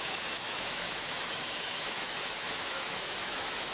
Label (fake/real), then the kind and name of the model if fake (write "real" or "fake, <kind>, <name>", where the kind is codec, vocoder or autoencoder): fake, autoencoder, DAC-VAE